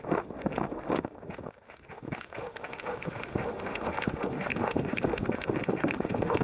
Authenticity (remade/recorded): remade